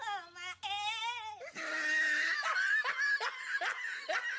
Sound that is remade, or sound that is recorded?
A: recorded